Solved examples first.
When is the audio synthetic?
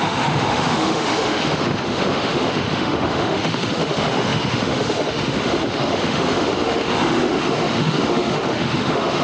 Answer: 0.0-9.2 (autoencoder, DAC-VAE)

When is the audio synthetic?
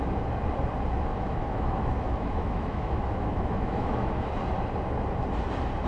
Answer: 1.1-4.3 (autoencoder, DAC-VAE)